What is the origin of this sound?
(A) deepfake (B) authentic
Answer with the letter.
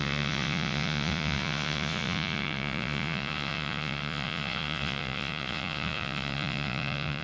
A